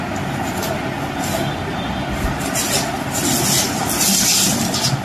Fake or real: real